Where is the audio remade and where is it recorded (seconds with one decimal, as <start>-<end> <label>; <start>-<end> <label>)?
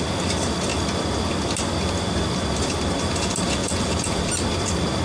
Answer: 0.0-3.6 recorded; 3.6-4.2 remade; 4.2-5.0 recorded